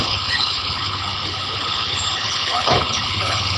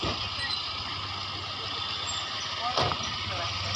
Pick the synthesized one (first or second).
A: first